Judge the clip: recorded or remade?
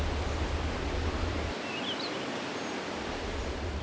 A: recorded